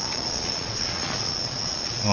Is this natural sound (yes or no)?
no